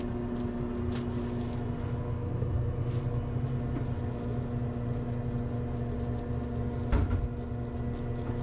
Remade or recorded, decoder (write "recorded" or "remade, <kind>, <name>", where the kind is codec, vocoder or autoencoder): recorded